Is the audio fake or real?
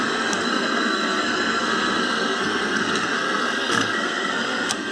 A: fake